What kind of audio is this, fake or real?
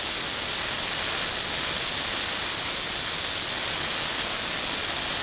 real